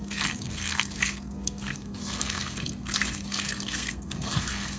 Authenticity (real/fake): fake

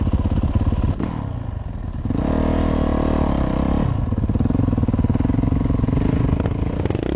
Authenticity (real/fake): real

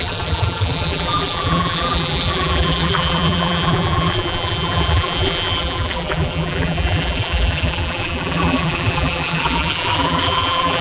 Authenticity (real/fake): fake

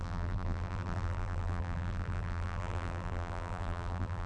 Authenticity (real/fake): fake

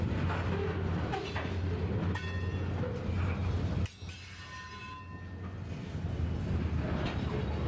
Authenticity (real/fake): real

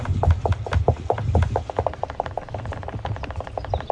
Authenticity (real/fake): real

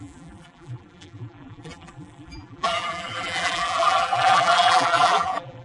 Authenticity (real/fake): fake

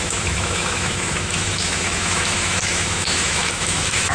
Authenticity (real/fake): fake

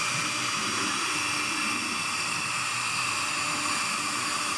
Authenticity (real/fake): real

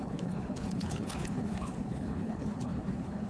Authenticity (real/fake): fake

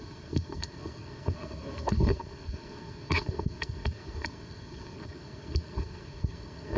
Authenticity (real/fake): fake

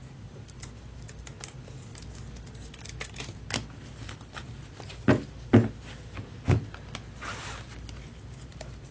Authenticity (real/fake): real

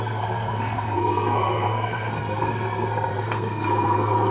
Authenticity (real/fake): fake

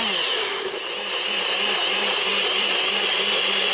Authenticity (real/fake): fake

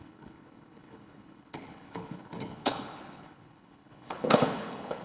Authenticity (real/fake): fake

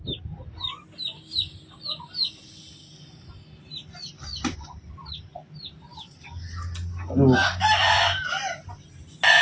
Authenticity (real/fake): real